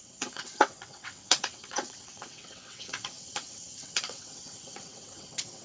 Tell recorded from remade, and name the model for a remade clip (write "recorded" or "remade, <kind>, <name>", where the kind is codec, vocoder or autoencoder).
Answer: remade, vocoder, WaveNeXt